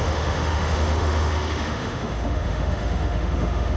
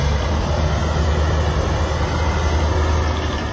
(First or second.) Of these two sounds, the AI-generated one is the first